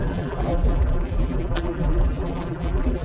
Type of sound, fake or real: fake